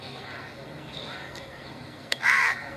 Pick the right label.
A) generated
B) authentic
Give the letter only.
A